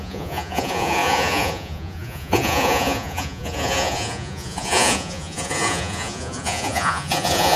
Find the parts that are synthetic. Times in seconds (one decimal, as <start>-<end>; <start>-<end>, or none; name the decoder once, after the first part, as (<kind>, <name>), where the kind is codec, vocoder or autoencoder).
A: 0.0-7.6 (vocoder, Vocos)